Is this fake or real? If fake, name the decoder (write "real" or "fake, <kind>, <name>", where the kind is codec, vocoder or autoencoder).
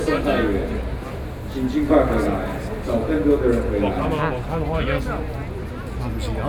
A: real